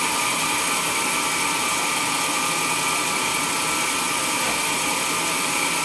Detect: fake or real real